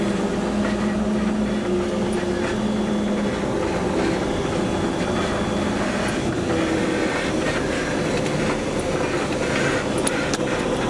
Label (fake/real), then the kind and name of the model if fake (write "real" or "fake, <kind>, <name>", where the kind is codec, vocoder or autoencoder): real